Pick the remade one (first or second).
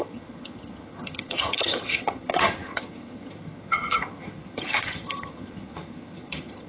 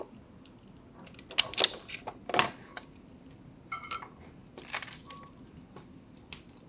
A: first